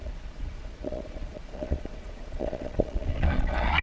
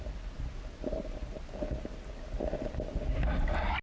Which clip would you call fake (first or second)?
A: first